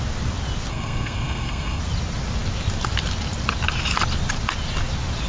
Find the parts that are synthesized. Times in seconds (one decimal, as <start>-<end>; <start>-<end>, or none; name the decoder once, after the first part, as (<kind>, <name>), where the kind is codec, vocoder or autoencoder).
0.7-1.8 (codec, SNAC)